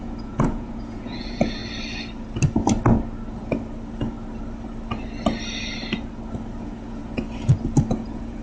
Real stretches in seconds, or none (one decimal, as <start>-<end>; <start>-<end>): 1.6-6.6; 7.0-7.9